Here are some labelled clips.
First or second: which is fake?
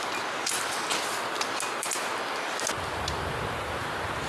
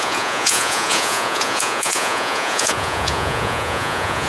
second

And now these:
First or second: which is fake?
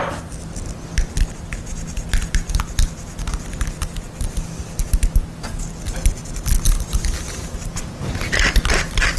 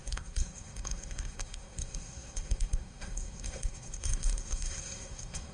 second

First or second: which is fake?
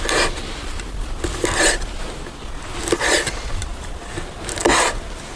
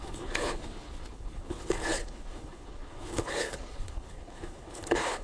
second